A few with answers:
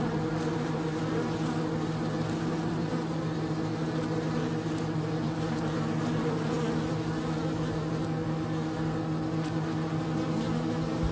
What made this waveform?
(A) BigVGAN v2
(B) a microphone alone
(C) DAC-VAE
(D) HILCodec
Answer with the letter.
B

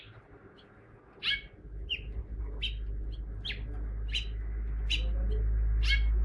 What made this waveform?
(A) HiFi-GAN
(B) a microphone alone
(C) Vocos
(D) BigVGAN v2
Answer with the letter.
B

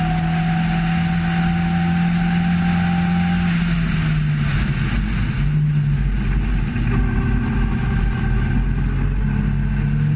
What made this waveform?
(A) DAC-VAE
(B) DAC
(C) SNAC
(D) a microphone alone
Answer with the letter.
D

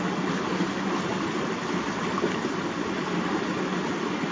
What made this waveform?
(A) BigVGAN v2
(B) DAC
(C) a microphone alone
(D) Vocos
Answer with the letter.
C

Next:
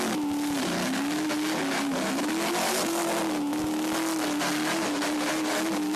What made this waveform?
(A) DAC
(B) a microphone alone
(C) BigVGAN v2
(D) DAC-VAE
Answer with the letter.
B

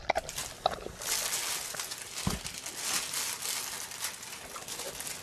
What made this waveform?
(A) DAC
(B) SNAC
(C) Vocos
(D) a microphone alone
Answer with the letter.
D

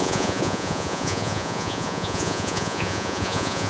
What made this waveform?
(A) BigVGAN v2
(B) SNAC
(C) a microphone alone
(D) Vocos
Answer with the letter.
D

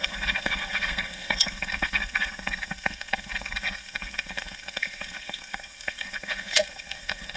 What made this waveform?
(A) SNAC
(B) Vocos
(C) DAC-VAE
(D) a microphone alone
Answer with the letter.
A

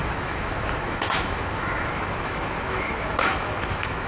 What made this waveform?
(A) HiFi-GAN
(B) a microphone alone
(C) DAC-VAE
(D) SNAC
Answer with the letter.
C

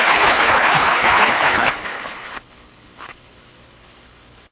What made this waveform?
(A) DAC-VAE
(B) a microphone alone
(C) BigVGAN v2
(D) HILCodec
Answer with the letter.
D